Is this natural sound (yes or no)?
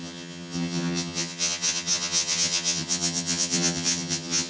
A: no